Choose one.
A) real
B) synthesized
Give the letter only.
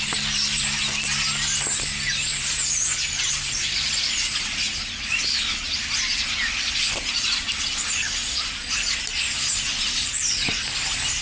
A